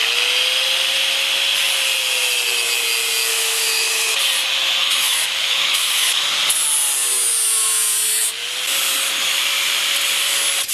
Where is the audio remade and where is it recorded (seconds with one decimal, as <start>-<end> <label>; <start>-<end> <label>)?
0.0-3.3 recorded; 3.3-4.2 remade; 4.2-4.8 recorded; 4.8-6.3 remade; 6.3-10.7 recorded